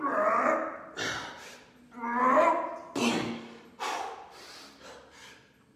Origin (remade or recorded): recorded